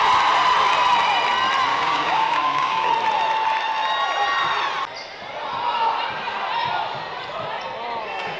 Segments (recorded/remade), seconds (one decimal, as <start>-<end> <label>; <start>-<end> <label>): 0.0-1.7 recorded; 1.7-2.9 remade; 2.9-8.4 recorded